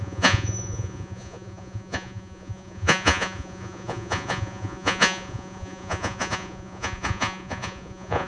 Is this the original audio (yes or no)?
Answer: no